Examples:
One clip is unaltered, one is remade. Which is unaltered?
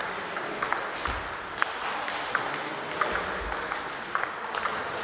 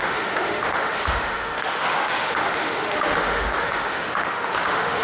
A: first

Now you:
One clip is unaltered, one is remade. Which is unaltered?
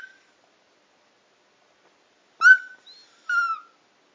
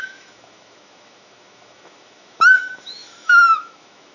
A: first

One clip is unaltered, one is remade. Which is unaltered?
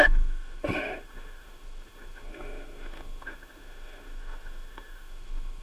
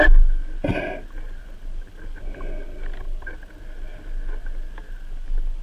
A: second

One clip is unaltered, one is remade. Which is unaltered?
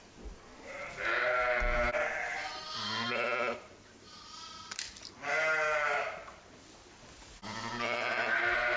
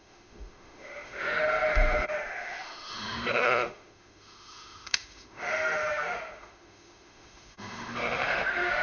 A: first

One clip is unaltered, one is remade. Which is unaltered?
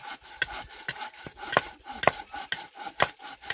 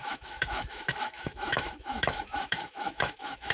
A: first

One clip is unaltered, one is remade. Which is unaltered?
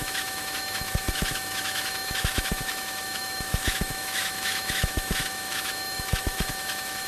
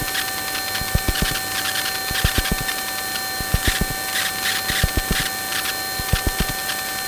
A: second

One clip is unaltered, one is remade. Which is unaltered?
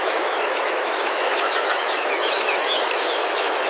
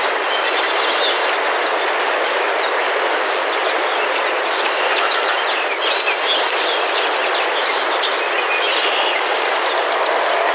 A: second